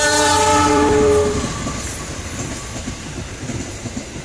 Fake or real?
fake